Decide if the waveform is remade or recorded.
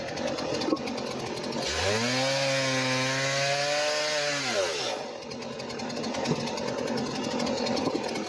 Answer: recorded